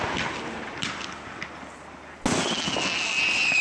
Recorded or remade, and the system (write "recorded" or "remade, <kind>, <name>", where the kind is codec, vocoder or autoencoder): recorded